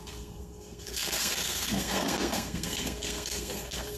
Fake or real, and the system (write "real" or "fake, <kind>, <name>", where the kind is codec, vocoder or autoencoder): fake, codec, SNAC